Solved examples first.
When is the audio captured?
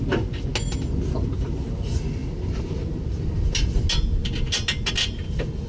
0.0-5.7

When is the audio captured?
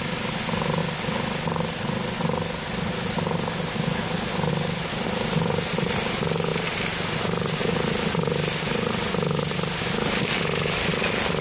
0.0-11.4